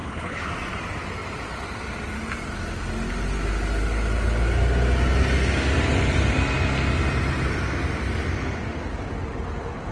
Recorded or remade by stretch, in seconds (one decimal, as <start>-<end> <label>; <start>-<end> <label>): 0.0-0.5 remade; 0.5-9.9 recorded